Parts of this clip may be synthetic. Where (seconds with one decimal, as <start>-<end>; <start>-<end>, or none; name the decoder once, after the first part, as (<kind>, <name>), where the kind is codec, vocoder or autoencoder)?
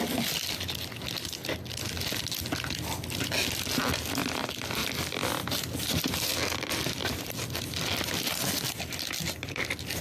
7.0-8.9 (vocoder, BigVGAN v2)